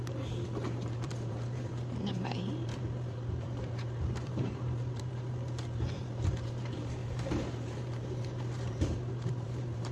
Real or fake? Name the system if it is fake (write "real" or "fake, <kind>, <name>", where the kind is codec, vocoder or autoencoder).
fake, vocoder, BigVGAN v2